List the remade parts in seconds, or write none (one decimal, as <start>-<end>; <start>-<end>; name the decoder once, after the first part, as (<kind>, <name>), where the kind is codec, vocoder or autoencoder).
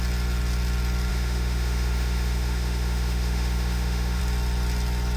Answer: 1.1-4.2 (autoencoder, DAC-VAE)